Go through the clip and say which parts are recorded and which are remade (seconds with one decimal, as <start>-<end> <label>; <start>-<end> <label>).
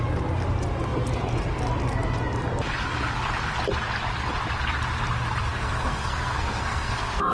0.0-5.5 recorded; 5.5-7.3 remade